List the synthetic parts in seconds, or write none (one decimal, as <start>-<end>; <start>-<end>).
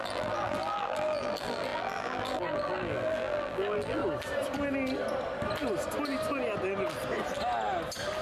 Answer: 0.0-4.0